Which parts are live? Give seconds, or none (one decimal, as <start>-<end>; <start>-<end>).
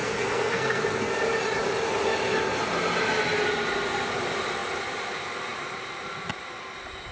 1.1-7.1